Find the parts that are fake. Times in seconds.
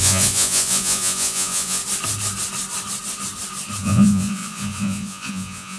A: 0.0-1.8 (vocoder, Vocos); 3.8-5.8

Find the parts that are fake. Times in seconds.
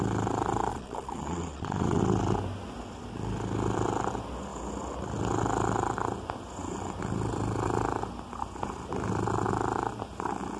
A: 0.7-2.0 (vocoder, Vocos)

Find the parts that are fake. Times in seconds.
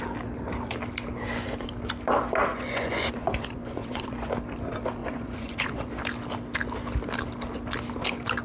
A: 2.5-4.3 (vocoder, Vocos); 5.0-5.9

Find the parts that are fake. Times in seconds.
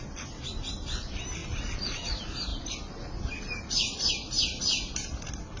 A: none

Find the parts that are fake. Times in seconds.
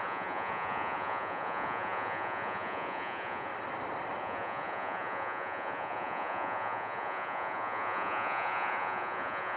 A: 0.0-3.5 (vocoder, Vocos); 4.2-9.6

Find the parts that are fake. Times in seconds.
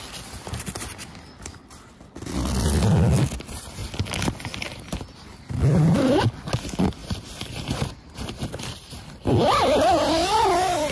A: none